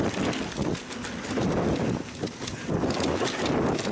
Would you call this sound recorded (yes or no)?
yes